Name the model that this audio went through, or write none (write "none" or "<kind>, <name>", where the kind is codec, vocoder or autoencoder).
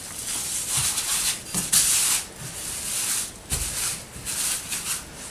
none